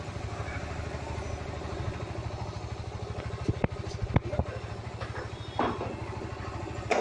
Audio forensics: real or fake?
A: real